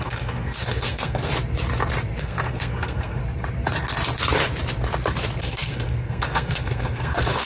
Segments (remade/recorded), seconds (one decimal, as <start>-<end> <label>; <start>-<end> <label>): 0.0-1.3 remade; 1.3-2.2 recorded; 2.2-3.2 remade; 3.2-5.4 recorded; 5.4-7.5 remade